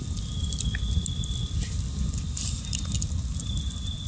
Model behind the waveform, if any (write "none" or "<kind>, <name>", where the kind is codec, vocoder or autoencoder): none